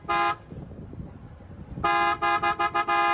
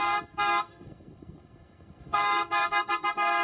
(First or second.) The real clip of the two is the first